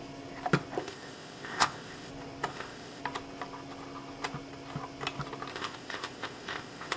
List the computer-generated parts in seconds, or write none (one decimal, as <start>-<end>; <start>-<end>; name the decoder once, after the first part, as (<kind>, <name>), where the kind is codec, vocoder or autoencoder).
0.8-2.1 (codec, ZipCodec); 2.5-3.0; 5.5-7.0